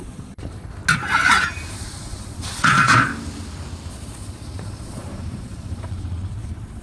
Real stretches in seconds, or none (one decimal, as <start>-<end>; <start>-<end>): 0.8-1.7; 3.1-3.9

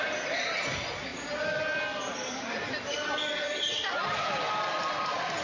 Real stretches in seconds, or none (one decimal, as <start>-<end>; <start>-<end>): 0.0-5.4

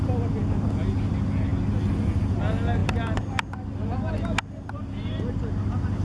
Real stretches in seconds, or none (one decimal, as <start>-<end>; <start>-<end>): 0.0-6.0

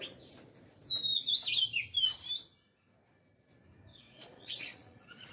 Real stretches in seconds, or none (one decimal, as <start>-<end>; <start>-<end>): 0.0-3.9

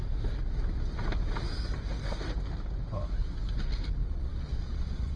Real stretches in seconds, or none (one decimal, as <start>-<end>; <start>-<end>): 0.0-4.0